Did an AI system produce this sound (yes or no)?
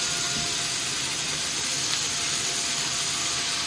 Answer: no